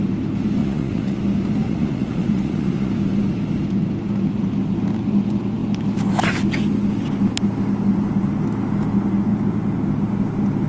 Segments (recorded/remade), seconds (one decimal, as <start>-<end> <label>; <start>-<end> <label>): 0.0-0.6 recorded; 0.6-1.2 remade; 1.2-1.6 recorded; 1.6-2.9 remade; 2.9-10.7 recorded